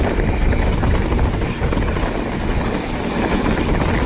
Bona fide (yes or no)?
yes